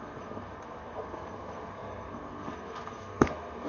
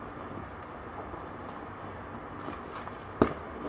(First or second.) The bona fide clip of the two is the second